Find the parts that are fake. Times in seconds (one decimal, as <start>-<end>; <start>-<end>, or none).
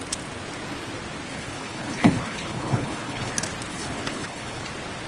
1.3-3.3; 3.7-4.6